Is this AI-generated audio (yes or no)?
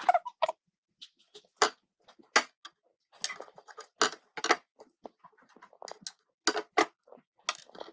no